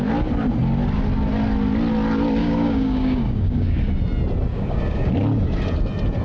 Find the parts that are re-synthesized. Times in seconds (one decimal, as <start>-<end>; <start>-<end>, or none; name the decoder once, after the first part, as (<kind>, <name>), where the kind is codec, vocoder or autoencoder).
2.4-3.8 (codec, DAC); 4.5-5.1